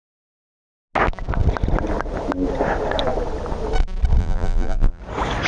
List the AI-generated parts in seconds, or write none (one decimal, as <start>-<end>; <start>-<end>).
4.2-5.0